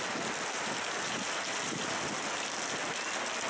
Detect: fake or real real